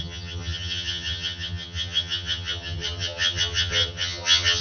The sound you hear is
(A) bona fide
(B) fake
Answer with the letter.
B